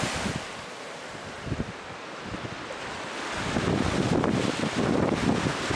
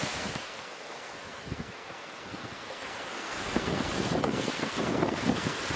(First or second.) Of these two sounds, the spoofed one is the second